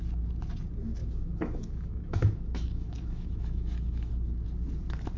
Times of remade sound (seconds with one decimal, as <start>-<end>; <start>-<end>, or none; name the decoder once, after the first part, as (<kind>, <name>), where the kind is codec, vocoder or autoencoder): 1.0-4.1 (autoencoder, DAC-VAE)